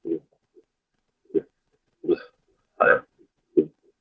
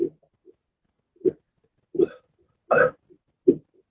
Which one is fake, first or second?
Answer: first